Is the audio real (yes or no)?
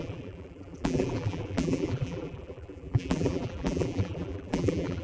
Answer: no